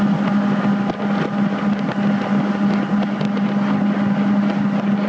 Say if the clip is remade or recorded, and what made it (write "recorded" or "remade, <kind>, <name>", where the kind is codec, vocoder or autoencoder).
recorded